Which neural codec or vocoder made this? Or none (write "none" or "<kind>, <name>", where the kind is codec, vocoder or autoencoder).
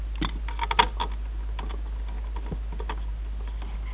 none